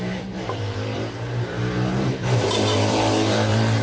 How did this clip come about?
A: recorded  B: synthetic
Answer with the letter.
B